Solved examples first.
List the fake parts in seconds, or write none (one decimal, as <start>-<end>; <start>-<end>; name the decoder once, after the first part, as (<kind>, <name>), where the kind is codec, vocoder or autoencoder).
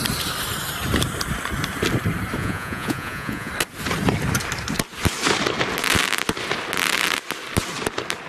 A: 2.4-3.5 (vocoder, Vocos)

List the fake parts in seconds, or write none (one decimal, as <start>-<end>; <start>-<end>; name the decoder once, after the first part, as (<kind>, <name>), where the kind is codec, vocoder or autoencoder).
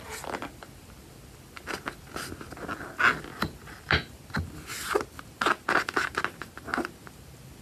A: none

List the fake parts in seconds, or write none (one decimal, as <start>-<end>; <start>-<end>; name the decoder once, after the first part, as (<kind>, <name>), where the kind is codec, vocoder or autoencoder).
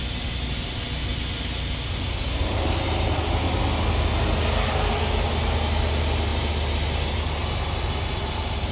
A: none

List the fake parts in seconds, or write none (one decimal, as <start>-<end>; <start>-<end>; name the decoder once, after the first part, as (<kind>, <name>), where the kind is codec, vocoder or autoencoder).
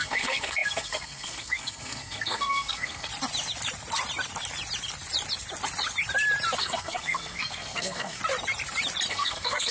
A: 0.0-3.1 (codec, SNAC); 6.6-8.2; 9.1-9.7